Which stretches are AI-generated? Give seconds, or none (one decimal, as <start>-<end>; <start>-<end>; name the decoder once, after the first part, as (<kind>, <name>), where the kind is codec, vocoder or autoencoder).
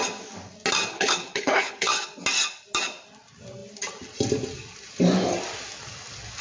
0.9-1.9 (codec, HILCodec)